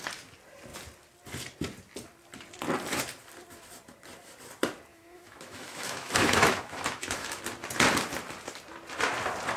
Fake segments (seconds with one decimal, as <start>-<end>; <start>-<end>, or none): 4.9-7.4